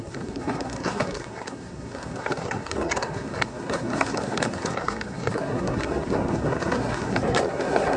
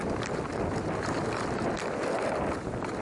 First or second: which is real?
second